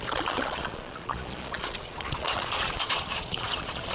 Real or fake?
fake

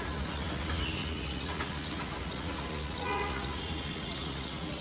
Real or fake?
fake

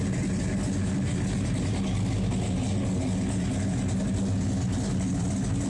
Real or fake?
real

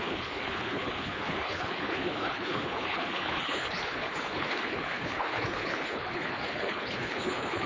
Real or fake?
fake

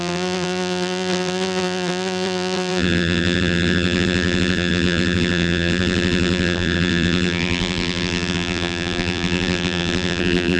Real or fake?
fake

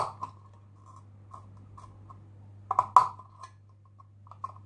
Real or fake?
real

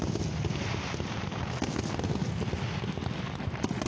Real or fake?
real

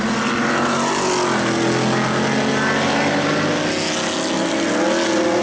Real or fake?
real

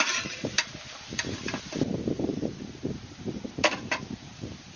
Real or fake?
fake